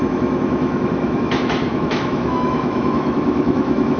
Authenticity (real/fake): fake